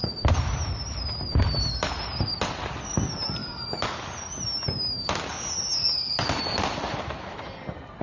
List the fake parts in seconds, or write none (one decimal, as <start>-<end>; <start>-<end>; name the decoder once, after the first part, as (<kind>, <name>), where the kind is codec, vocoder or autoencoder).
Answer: none